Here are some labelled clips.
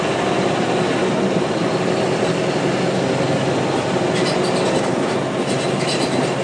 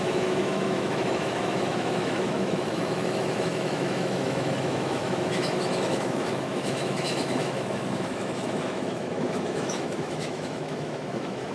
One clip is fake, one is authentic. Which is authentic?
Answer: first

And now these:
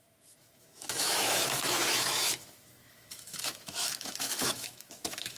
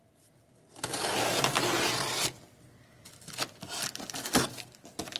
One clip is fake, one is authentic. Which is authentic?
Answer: second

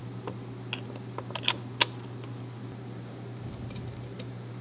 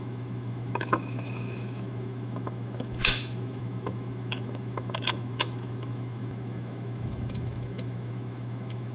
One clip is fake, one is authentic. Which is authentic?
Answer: first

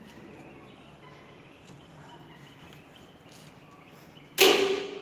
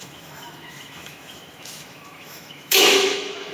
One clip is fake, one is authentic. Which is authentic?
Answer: first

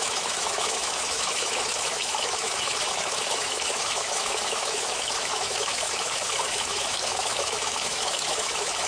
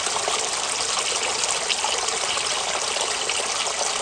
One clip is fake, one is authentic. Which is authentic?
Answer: second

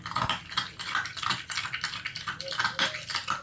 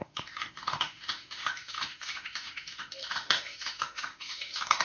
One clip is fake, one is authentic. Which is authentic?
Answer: first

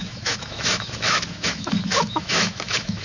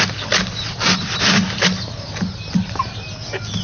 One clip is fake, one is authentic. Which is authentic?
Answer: second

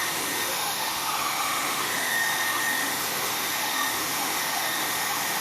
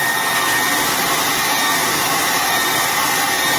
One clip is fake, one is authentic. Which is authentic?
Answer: second